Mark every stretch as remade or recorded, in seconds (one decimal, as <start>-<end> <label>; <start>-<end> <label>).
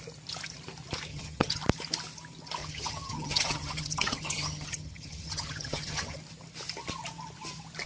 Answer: 0.0-1.1 recorded; 1.1-1.6 remade; 1.6-2.6 recorded; 2.6-6.2 remade; 6.2-7.9 recorded